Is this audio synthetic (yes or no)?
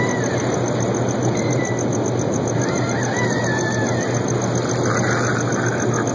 no